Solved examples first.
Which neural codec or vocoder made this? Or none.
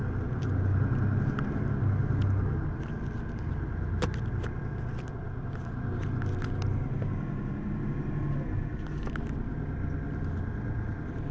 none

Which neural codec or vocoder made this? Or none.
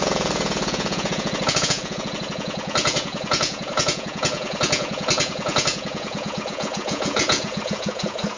vocoder, Vocos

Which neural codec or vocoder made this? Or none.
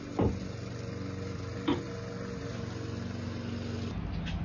none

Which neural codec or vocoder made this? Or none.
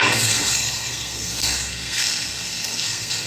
codec, SNAC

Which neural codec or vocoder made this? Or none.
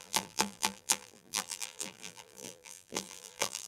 vocoder, BigVGAN v2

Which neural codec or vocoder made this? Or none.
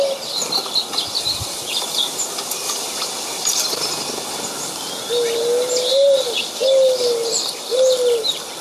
none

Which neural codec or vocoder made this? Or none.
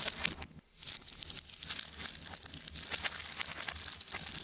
none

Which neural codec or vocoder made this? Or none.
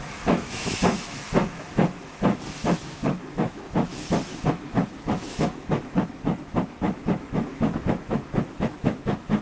autoencoder, DAC-VAE